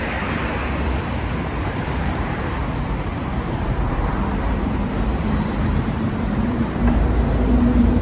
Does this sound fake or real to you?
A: fake